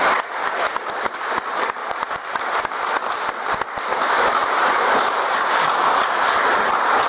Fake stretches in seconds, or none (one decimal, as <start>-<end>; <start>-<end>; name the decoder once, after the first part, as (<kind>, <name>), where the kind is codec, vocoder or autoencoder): 1.8-2.4 (vocoder, BigVGAN v2); 4.6-6.5

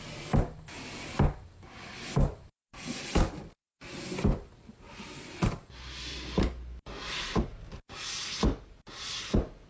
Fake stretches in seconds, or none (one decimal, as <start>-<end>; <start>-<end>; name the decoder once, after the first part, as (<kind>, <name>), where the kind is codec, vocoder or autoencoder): none

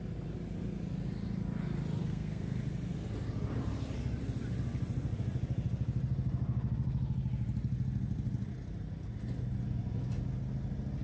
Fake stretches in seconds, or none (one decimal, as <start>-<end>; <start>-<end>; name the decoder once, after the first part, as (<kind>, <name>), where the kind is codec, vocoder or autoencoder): 2.0-2.6 (codec, SNAC)

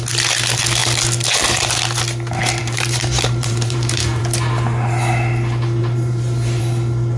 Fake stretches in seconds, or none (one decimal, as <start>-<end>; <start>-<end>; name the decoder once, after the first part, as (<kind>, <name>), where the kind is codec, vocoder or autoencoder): 2.6-4.2 (vocoder, BigVGAN v2); 5.8-6.6

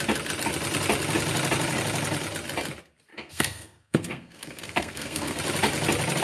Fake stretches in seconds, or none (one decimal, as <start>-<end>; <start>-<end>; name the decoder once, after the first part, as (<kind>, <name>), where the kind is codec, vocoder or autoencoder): 3.1-5.4 (codec, SNAC)

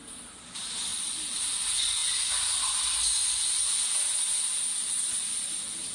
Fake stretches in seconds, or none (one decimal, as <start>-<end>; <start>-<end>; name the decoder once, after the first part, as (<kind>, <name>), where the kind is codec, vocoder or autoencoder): 0.9-1.4 (vocoder, BigVGAN v2)

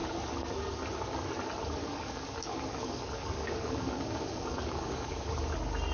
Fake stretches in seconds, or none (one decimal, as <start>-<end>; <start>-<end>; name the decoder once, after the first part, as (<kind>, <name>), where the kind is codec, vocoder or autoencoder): 1.8-5.3 (codec, DAC)

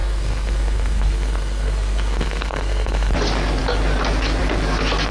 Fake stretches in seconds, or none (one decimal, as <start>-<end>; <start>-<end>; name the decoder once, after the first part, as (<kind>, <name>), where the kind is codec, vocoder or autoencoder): 0.0-3.1 (codec, SNAC)